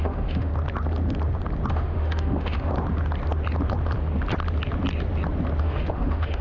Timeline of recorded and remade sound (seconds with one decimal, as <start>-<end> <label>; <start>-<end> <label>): 0.0-0.5 remade; 0.5-1.7 recorded; 1.7-2.7 remade; 2.7-5.6 recorded; 5.6-6.4 remade